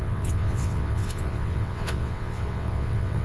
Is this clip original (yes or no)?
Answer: no